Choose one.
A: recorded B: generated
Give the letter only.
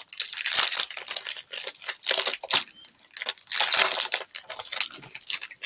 A